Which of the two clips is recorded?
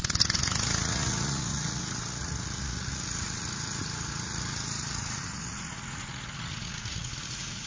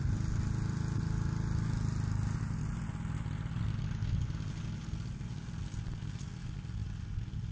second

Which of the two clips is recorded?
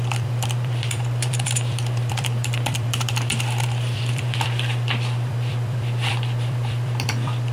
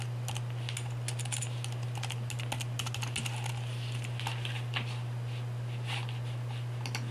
second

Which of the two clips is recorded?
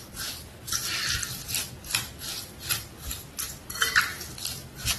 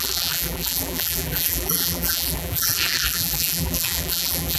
first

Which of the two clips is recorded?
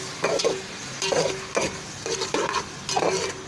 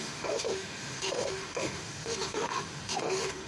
first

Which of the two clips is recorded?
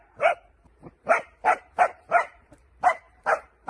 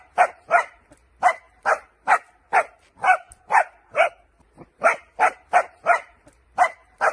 second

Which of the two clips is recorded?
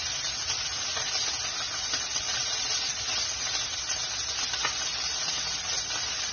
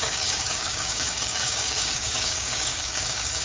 first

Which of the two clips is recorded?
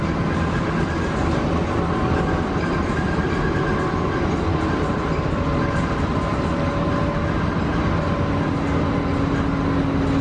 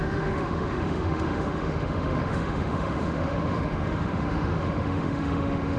first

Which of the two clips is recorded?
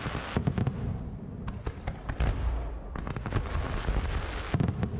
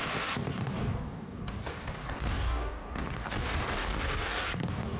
first